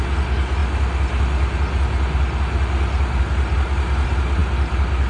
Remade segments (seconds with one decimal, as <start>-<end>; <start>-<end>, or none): none